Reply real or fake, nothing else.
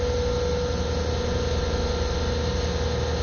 real